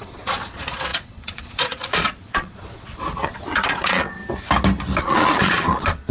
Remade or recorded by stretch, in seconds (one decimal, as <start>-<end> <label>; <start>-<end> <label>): 0.0-4.2 remade; 4.2-5.0 recorded; 5.0-6.1 remade